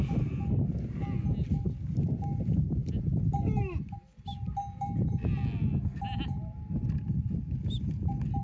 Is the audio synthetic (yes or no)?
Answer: no